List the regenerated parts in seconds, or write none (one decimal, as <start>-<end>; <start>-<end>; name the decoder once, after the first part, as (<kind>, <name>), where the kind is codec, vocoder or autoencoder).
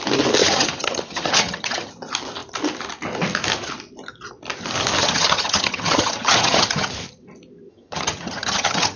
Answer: 0.4-1.9 (vocoder, HiFi-GAN); 5.0-6.9; 7.7-9.0